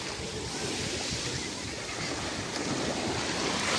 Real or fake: real